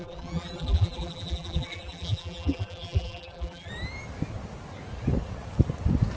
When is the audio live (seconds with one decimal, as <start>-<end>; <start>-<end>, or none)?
3.7-6.2